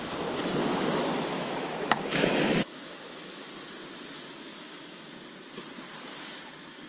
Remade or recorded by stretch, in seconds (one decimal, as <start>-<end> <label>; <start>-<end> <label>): 0.0-0.6 recorded; 0.6-3.5 remade; 3.5-4.5 recorded; 4.5-5.0 remade; 5.0-6.9 recorded